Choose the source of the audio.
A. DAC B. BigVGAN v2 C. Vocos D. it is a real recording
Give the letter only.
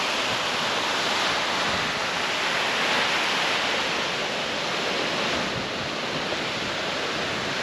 D